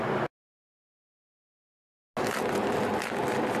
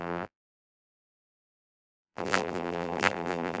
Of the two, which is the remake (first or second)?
second